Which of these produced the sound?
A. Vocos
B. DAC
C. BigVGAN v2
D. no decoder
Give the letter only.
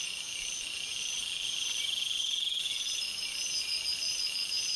C